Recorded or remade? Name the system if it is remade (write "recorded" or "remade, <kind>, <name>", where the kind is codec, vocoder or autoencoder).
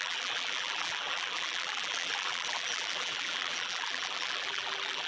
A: remade, vocoder, BigVGAN v2